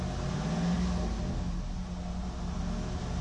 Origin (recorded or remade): recorded